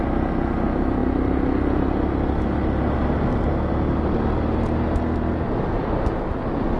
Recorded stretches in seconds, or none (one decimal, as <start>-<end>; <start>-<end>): 0.0-6.8